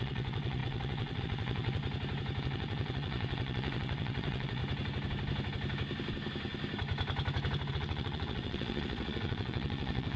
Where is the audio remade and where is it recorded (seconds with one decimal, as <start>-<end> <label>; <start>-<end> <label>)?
0.0-1.8 remade; 1.8-2.4 recorded; 2.4-4.6 remade; 4.6-7.7 recorded; 7.7-10.2 remade